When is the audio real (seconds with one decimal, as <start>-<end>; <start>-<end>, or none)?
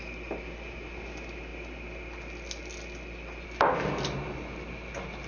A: 0.0-5.3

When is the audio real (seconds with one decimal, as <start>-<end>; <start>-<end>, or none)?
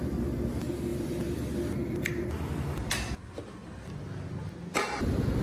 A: 0.0-0.9; 2.9-5.4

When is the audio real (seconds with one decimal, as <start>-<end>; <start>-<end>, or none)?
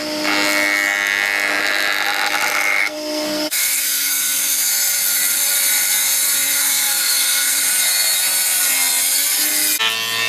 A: 0.0-2.8; 4.7-6.6; 7.6-10.3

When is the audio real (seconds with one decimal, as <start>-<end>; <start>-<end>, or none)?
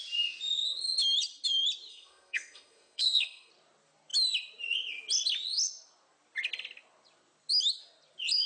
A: 0.0-1.9; 3.5-8.5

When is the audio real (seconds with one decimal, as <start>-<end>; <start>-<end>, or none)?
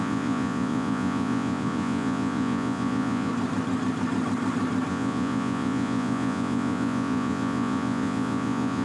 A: 3.3-4.9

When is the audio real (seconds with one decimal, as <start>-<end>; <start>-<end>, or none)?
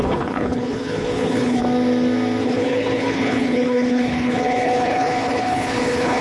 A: 1.6-2.4